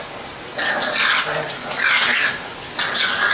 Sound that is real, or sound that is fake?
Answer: real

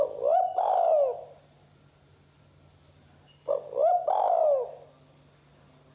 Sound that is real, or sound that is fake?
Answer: real